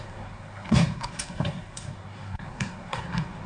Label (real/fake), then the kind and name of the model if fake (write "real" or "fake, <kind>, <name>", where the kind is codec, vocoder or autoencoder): fake, codec, SNAC